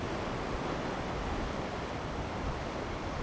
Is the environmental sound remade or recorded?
recorded